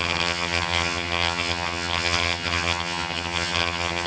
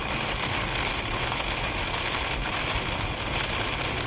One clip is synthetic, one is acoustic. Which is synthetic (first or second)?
first